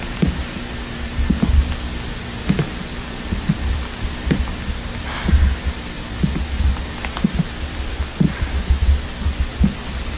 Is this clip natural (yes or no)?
yes